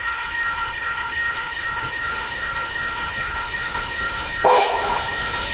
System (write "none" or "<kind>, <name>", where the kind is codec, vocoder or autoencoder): codec, HILCodec